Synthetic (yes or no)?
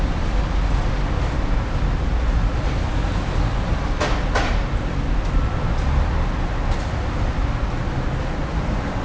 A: no